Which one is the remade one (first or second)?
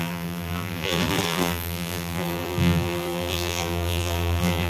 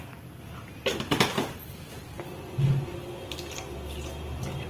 first